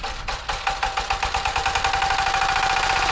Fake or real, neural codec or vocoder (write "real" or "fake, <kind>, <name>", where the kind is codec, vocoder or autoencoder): real